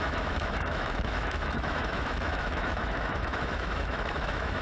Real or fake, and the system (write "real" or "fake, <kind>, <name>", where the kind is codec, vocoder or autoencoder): fake, autoencoder, DAC-VAE